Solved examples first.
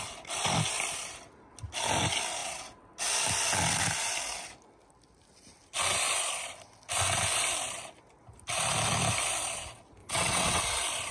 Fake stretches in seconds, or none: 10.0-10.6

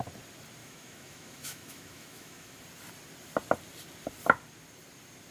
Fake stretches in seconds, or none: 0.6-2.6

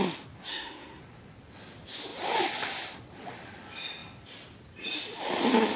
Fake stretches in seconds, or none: 0.5-1.0

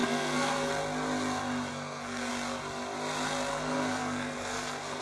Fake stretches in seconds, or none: 0.0-0.7; 1.7-2.3; 3.5-5.0

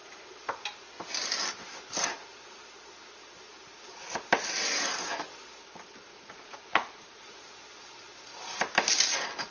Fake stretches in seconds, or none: 6.1-7.5